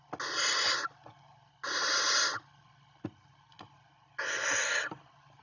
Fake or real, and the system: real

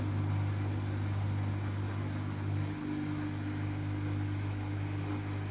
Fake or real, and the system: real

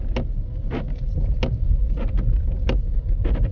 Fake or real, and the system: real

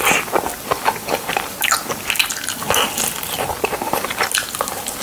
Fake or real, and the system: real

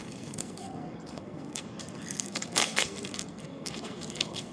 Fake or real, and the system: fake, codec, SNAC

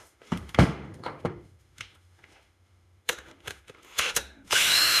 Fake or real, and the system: fake, autoencoder, DAC-VAE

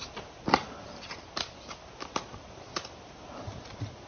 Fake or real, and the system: real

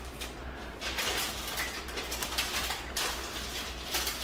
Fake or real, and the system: fake, vocoder, BigVGAN v2